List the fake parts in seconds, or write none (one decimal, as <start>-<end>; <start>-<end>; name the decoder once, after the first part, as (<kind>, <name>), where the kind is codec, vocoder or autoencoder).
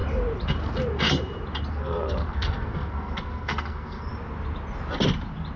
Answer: 1.7-4.1 (codec, SNAC)